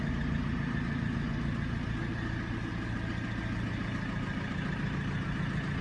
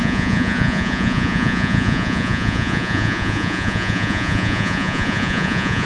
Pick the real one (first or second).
first